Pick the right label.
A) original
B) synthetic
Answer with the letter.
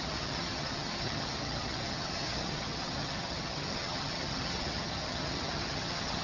B